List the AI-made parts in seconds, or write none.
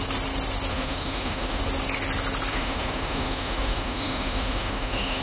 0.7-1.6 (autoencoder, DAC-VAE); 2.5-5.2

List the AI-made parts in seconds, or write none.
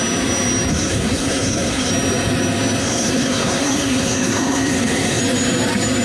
0.7-1.9 (codec, SNAC); 2.8-5.2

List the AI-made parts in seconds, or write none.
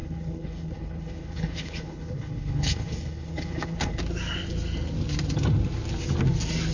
0.0-4.0 (codec, HILCodec)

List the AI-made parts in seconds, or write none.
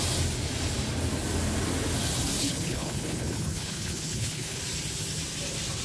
2.4-4.6 (codec, HILCodec)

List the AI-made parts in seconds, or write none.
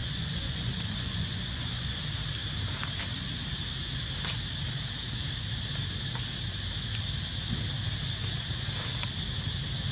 0.0-2.0 (vocoder, Vocos)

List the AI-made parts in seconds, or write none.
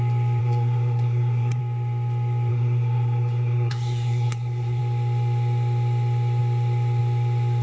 0.4-1.6 (codec, SNAC); 2.5-4.8